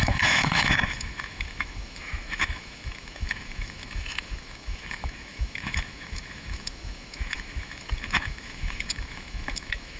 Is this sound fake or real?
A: fake